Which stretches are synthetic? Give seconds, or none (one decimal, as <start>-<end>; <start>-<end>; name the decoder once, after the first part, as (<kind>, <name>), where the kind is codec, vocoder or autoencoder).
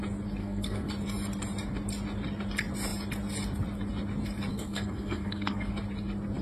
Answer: 0.4-0.9 (codec, SNAC); 4.5-5.7